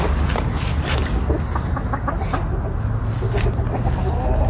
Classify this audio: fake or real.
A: real